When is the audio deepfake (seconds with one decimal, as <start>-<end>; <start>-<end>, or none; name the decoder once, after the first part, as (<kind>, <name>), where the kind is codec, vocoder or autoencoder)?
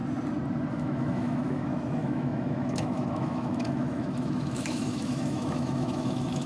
0.7-6.5 (autoencoder, DAC-VAE)